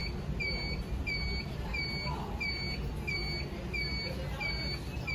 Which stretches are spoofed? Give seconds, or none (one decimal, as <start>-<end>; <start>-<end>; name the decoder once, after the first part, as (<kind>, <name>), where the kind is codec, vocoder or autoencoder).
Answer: none